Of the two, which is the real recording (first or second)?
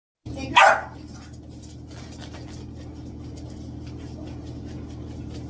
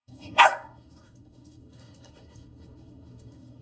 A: first